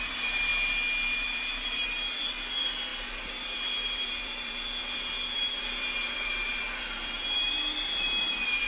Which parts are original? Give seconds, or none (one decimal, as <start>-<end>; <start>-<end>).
0.5-1.1